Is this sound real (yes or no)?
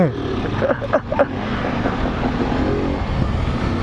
yes